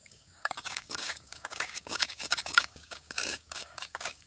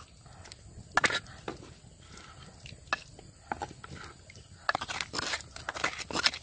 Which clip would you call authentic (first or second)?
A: second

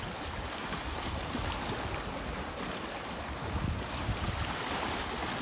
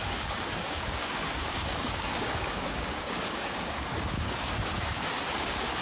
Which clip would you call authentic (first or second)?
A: first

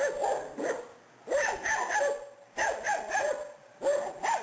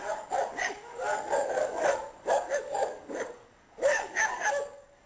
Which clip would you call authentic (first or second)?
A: first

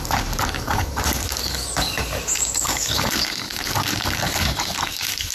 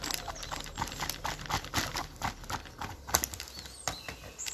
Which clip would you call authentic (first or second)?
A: second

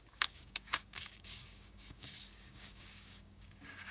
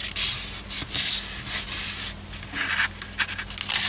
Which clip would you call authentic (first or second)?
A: second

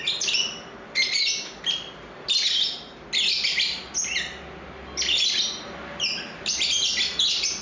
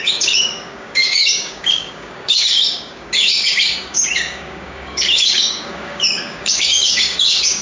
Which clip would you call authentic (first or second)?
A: first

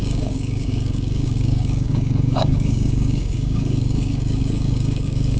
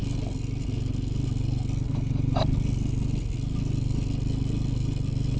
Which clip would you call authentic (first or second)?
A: second